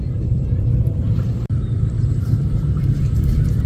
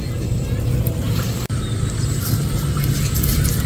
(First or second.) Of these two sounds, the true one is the second